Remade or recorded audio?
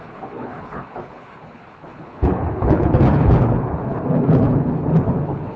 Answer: remade